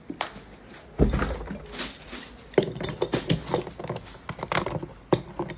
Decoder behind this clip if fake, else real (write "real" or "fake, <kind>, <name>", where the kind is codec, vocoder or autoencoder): real